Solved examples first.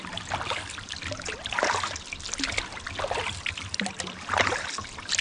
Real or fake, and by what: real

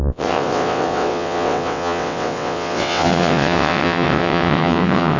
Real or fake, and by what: fake, vocoder, WaveNeXt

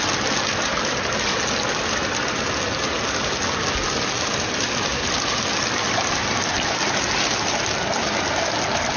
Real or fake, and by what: real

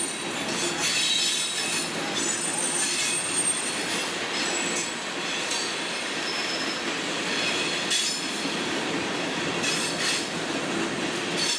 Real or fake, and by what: real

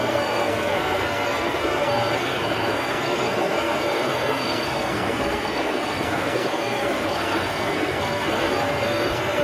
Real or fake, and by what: fake, codec, SNAC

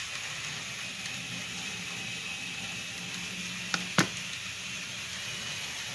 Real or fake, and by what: real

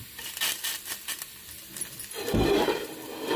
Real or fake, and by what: real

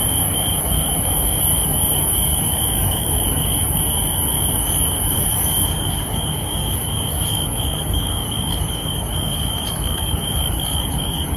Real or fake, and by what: fake, codec, DAC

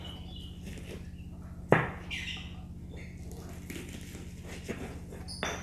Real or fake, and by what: real